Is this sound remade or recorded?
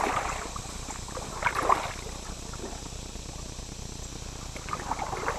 recorded